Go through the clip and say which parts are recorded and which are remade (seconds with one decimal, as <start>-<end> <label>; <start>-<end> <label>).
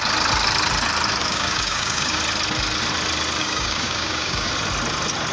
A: 0.0-1.2 recorded; 1.2-2.2 remade; 2.2-3.4 recorded; 3.4-4.5 remade; 4.5-5.3 recorded